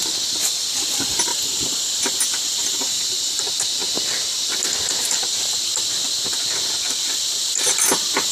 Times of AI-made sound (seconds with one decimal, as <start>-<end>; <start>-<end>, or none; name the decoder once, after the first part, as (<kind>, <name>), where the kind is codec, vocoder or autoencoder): none